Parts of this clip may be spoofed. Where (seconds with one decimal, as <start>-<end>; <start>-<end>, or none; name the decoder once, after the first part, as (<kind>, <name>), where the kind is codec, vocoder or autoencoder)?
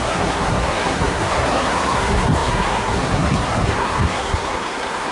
0.0-5.1 (codec, SNAC)